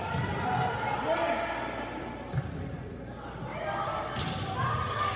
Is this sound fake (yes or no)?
no